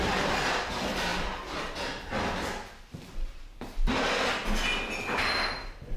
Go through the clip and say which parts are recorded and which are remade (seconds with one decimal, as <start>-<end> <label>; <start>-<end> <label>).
0.0-1.1 remade; 1.1-2.8 recorded; 2.8-4.4 remade; 4.4-6.0 recorded